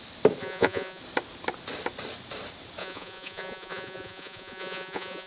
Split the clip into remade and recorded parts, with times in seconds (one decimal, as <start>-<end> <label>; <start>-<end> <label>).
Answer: 0.0-0.4 recorded; 0.4-1.0 remade; 1.0-2.8 recorded; 2.8-5.3 remade